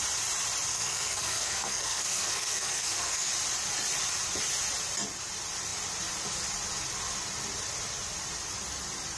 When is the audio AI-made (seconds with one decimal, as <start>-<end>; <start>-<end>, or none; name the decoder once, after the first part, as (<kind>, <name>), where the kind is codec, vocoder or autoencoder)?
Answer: 0.7-3.3 (codec, SNAC)

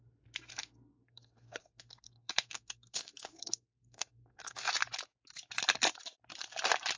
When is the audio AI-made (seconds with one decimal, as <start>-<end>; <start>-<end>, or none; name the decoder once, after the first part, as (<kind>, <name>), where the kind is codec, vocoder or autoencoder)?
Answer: 0.5-4.7 (codec, SNAC)

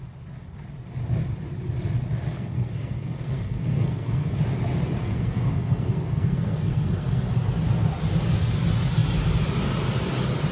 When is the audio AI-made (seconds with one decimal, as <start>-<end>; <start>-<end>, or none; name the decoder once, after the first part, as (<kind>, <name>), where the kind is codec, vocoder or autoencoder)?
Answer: 2.3-4.4 (codec, SNAC); 5.0-7.3

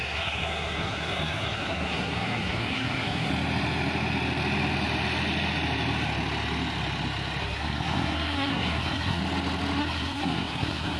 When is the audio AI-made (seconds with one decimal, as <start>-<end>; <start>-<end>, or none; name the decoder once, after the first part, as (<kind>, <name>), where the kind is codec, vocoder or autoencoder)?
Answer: 0.0-3.3 (codec, SNAC); 7.4-9.2; 9.8-11.0

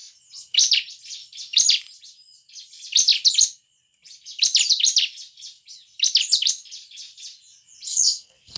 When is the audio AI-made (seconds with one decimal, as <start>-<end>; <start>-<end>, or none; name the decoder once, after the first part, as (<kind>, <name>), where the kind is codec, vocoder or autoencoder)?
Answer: 7.9-8.6 (codec, SNAC)

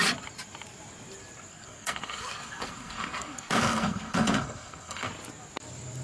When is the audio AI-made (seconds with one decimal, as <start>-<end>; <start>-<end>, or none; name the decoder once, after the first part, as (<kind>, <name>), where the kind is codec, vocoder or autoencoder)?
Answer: 1.5-5.1 (codec, SNAC)

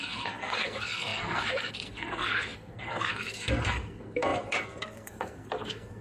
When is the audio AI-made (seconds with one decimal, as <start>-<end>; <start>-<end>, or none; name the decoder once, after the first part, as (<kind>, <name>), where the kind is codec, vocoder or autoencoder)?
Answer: 0.0-6.0 (codec, SNAC)

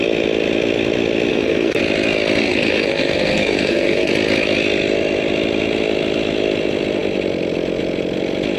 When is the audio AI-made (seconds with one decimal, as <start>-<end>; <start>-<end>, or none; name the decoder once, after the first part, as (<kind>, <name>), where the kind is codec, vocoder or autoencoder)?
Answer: 1.3-1.8 (codec, SNAC); 2.4-4.1